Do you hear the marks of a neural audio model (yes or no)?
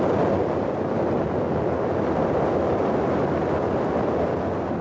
no